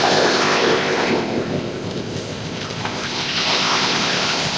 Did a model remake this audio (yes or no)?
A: yes